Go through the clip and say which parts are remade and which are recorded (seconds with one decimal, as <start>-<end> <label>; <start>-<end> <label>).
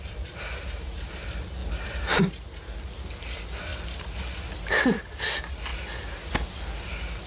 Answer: 0.0-7.3 recorded